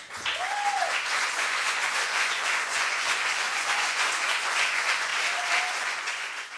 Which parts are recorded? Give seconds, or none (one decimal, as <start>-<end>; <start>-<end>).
5.1-5.7